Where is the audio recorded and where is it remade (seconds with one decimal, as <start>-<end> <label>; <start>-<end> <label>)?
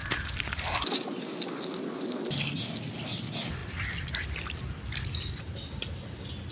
0.0-6.5 recorded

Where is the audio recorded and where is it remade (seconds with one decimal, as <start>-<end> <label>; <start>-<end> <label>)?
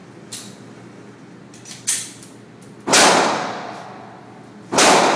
0.0-5.2 recorded